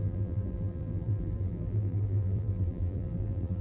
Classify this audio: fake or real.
fake